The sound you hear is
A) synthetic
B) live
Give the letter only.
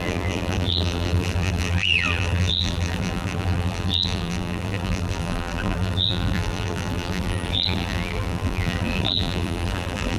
A